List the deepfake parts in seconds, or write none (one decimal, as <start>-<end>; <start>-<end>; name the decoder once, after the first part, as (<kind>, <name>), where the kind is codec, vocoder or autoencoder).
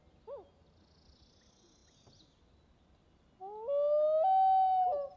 none